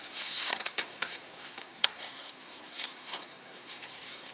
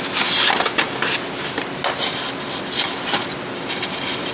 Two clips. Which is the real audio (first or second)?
second